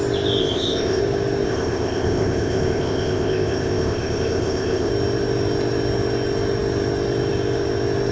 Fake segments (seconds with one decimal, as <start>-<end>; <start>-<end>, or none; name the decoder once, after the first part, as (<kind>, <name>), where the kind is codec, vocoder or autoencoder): 0.4-1.0 (codec, ZipCodec); 1.5-4.9